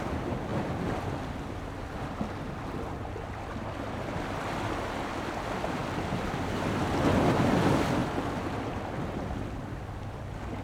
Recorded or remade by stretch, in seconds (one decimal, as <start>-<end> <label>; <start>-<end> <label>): 0.0-10.6 recorded

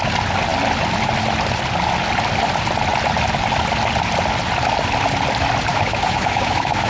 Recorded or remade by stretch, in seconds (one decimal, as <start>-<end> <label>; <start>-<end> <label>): 0.0-5.7 recorded; 5.7-6.9 remade